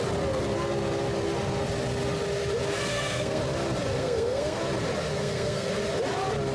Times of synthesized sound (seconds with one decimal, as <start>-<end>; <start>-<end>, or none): 2.9-3.4; 4.0-4.6; 5.1-5.7